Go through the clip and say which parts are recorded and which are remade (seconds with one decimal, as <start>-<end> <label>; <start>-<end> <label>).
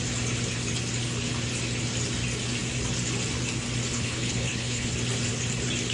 0.0-3.9 recorded; 3.9-4.9 remade; 4.9-5.9 recorded